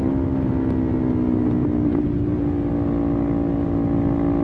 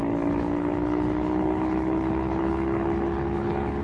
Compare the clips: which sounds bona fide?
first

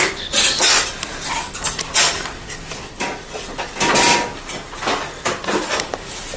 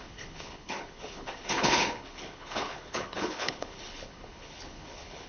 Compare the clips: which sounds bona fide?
first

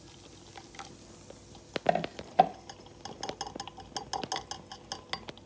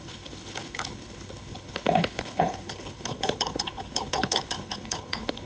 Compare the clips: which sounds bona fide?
first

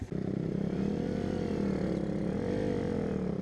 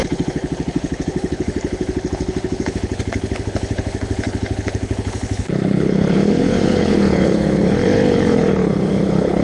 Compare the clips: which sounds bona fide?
first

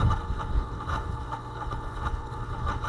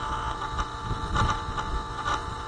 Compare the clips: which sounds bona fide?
second